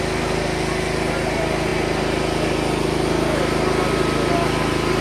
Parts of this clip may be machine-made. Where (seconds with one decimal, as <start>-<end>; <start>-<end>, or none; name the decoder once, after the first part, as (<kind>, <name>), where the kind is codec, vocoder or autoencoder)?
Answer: none